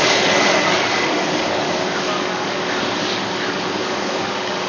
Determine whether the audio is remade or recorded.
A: remade